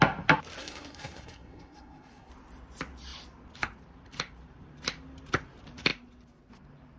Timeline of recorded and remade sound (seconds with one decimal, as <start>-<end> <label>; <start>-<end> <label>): 0.0-0.6 recorded; 0.6-2.3 remade; 2.3-7.0 recorded